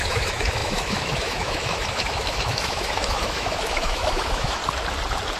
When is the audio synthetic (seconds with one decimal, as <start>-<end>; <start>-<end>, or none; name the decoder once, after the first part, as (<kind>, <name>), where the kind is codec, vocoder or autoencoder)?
0.0-4.6 (autoencoder, DAC-VAE)